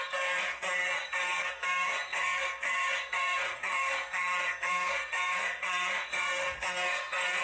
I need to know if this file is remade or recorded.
remade